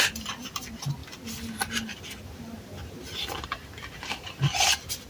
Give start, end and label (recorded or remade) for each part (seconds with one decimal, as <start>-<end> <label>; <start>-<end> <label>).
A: 0.0-5.1 recorded